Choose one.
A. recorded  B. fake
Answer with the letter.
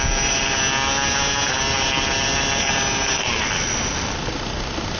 A